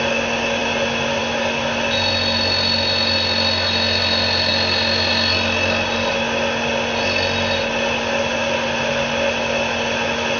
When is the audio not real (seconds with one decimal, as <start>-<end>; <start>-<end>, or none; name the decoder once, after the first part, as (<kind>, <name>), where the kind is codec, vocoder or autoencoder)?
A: none